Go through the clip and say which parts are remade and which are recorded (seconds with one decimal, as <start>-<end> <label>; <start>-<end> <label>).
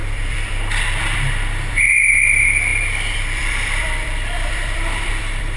0.0-5.6 remade